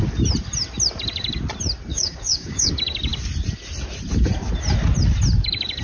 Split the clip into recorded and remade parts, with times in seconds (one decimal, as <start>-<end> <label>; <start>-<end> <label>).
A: 0.0-1.9 recorded; 1.9-2.7 remade; 2.7-5.8 recorded